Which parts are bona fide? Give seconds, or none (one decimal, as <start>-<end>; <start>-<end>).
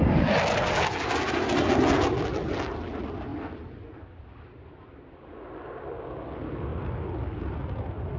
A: 0.0-8.2